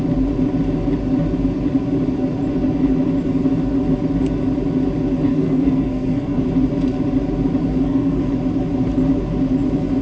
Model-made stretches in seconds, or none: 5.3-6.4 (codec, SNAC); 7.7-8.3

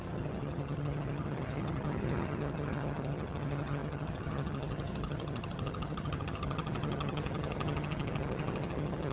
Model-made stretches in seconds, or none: 0.0-9.1 (vocoder, HiFi-GAN)

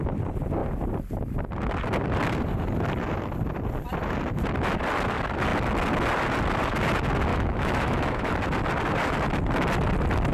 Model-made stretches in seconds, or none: 7.3-8.3 (autoencoder, DAC-VAE)